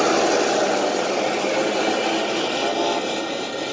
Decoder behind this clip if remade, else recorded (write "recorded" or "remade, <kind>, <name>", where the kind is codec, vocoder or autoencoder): recorded